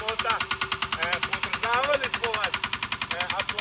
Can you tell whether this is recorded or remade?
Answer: recorded